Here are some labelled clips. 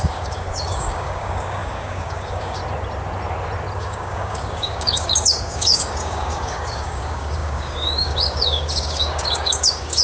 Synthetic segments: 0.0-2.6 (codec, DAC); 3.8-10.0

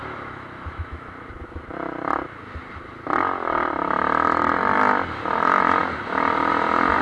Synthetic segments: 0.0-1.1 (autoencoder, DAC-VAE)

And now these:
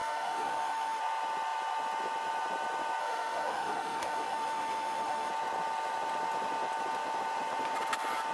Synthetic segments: 0.0-1.0 (autoencoder, DAC-VAE); 3.0-5.3